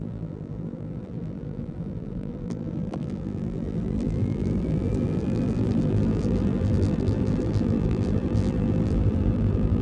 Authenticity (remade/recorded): remade